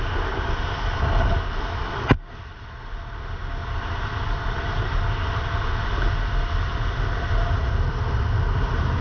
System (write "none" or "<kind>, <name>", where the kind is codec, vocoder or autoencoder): none